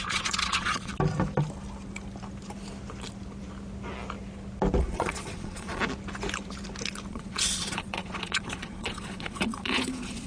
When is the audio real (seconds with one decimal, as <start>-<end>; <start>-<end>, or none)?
0.9-4.8; 5.8-7.1

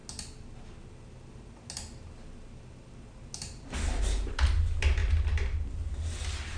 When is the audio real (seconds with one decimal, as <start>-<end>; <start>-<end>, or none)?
0.0-6.6

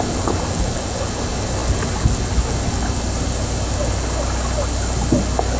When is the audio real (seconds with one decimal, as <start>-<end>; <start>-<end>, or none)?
0.0-5.6

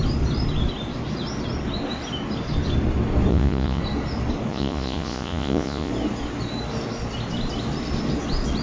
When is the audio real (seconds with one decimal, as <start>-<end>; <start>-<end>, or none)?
0.0-3.3; 3.8-4.5; 5.9-8.6

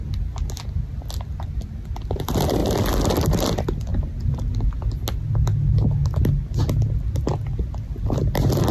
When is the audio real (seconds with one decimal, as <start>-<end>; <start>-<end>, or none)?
0.0-8.7

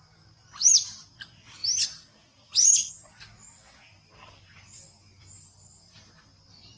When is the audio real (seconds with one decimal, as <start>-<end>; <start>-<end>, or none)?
0.0-6.8